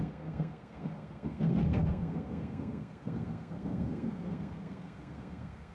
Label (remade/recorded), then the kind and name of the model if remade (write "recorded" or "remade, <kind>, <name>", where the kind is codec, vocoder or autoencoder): remade, codec, SNAC